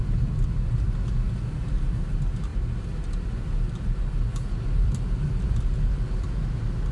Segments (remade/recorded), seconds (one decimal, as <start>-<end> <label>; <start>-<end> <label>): 0.0-6.9 recorded